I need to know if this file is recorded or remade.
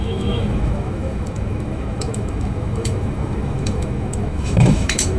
remade